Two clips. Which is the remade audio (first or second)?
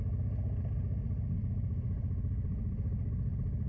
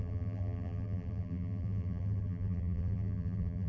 second